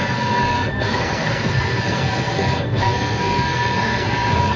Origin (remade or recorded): remade